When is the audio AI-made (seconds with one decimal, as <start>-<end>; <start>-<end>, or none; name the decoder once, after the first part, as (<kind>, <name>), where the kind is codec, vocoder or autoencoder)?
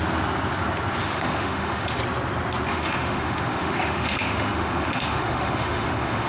1.0-2.0 (autoencoder, DAC-VAE); 2.7-6.3